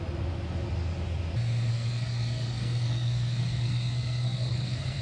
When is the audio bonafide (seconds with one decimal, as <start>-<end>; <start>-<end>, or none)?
0.0-1.7

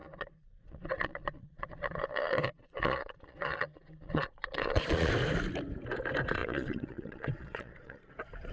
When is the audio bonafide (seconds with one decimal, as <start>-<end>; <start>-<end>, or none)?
5.1-6.4; 8.1-8.5

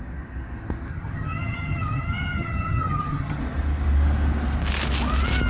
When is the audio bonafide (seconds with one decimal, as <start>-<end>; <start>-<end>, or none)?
0.0-0.9; 3.4-5.5

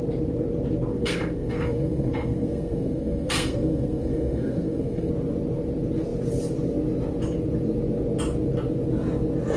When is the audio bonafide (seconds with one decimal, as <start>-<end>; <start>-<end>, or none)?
0.0-0.9; 5.1-9.6

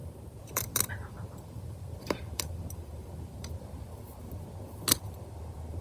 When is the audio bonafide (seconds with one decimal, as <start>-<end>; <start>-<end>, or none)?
3.5-5.8

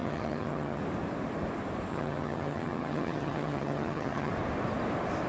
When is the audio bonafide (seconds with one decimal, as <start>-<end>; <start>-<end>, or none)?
0.8-1.9; 4.3-5.3